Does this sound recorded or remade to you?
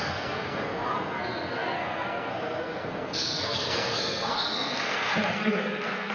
remade